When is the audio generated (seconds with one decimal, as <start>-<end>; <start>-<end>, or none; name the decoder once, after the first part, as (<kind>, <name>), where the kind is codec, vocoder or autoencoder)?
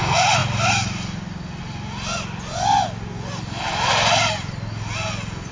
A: none